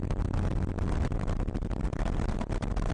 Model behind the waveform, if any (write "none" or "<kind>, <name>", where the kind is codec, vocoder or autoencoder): none